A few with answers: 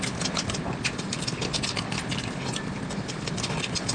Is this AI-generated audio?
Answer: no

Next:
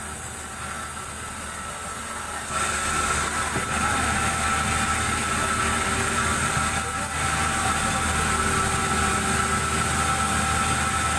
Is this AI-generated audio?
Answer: no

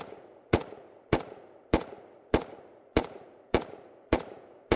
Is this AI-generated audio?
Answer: yes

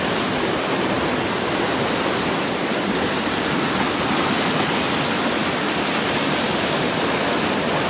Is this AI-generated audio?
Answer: no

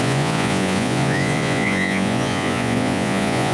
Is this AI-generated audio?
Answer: yes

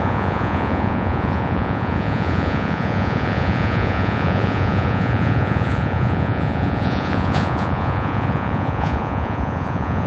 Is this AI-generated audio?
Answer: yes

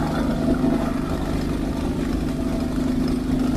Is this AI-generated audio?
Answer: no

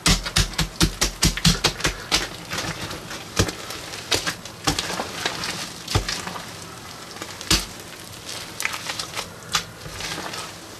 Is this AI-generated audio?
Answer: no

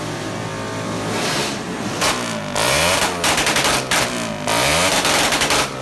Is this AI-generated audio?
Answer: no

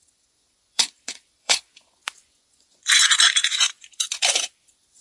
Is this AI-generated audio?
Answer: yes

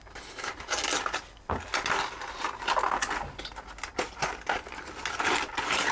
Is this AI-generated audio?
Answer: no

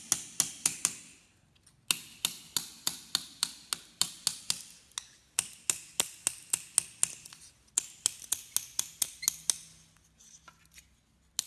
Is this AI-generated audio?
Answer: no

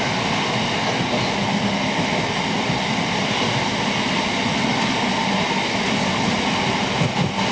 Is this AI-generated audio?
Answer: no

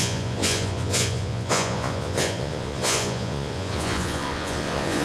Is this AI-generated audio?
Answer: yes